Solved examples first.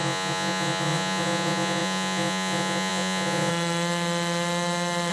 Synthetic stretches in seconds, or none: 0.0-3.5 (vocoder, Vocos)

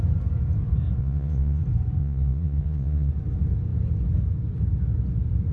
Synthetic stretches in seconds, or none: 1.0-1.6 (vocoder, Vocos); 2.0-3.1

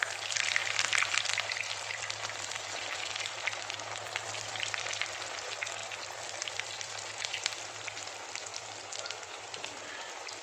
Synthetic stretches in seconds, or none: none

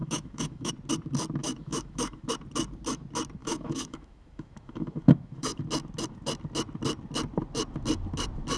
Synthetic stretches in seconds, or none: 0.0-0.7 (autoencoder, DAC-VAE); 1.4-2.3; 3.4-5.6

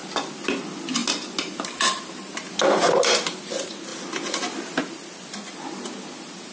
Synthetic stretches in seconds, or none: none

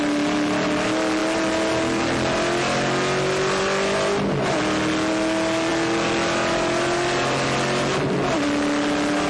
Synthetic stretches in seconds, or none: none